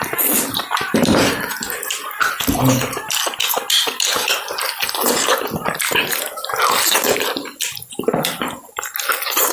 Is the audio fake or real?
real